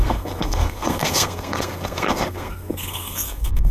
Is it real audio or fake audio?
fake